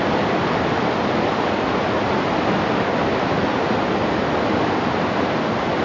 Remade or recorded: recorded